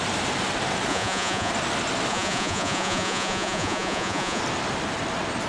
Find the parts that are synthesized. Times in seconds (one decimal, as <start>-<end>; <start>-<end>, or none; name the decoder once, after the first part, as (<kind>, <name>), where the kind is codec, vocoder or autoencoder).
0.9-1.5 (vocoder, Vocos); 2.1-4.4